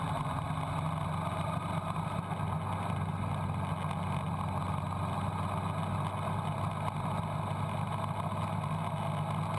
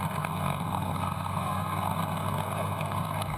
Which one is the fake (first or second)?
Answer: second